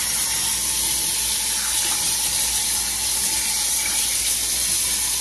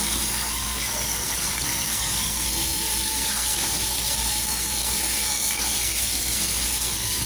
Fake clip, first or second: second